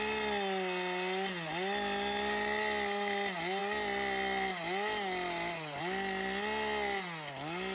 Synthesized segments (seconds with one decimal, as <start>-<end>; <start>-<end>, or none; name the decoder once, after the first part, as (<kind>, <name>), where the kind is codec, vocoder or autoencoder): none